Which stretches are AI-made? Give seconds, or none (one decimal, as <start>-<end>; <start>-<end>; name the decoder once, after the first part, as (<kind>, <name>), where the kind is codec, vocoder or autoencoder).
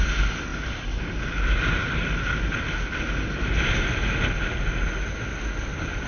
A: none